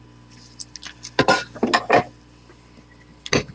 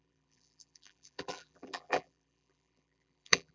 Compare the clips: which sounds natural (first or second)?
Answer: first